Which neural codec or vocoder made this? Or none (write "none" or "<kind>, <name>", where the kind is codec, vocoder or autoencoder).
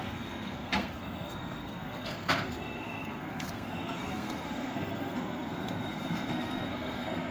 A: codec, SNAC